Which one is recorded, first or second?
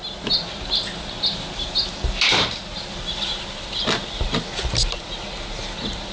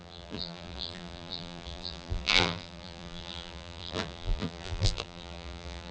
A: first